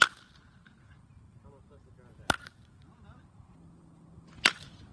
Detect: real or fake real